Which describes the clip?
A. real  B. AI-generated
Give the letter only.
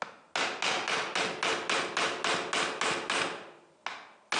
A